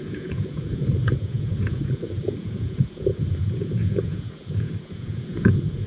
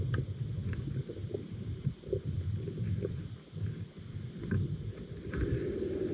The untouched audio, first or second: second